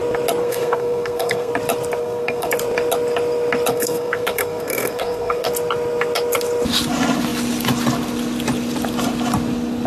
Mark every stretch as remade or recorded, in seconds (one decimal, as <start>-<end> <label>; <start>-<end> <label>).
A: 0.0-0.4 recorded; 0.4-1.5 remade; 1.5-2.0 recorded; 2.0-2.5 remade; 2.5-3.7 recorded; 3.7-5.5 remade; 5.5-9.9 recorded

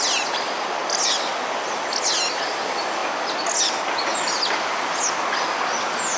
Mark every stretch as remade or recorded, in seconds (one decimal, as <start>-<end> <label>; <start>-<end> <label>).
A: 0.0-6.2 recorded

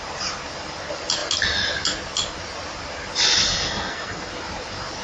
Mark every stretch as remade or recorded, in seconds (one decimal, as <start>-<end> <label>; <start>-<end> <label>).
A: 0.0-3.5 recorded; 3.5-4.3 remade; 4.3-5.0 recorded

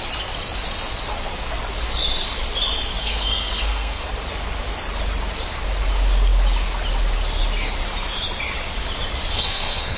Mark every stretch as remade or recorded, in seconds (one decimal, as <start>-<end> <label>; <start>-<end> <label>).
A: 0.0-3.0 recorded; 3.0-4.1 remade; 4.1-9.3 recorded; 9.3-10.0 remade

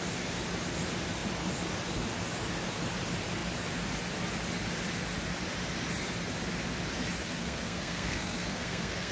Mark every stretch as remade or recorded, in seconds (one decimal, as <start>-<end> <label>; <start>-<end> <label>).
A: 0.0-7.2 recorded; 7.2-9.1 remade

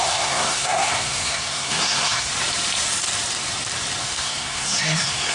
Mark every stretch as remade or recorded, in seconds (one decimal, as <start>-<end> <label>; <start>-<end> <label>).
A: 0.0-2.3 remade; 2.3-4.0 recorded; 4.0-5.3 remade